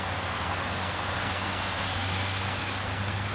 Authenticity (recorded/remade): remade